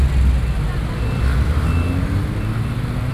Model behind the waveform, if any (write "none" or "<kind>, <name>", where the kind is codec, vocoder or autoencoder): none